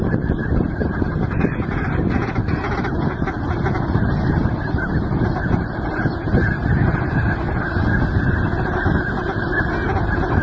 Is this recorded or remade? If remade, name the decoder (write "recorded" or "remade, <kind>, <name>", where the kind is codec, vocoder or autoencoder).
recorded